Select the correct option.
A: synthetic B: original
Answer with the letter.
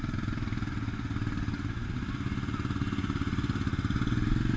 B